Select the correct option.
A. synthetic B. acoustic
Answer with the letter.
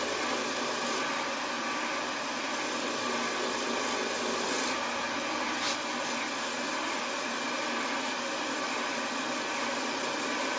B